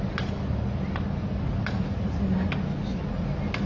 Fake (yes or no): no